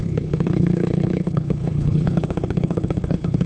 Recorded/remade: remade